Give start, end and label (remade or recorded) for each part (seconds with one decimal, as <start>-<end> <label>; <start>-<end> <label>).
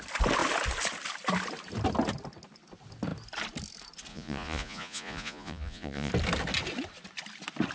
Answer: 0.0-4.1 recorded; 4.1-6.1 remade; 6.1-7.7 recorded